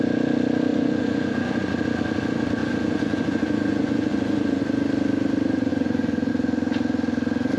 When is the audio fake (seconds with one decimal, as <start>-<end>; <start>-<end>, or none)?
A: 0.7-1.7; 2.6-4.6; 5.7-6.3